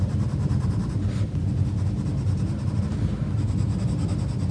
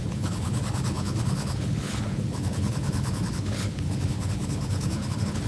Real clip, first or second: first